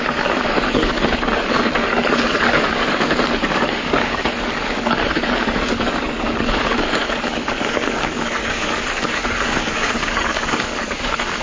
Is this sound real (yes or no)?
no